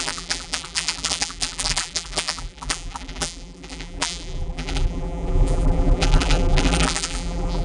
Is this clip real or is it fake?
fake